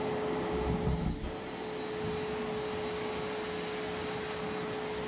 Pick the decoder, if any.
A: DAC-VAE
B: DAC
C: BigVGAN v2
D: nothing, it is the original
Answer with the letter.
D